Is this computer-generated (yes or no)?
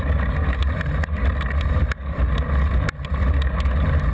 no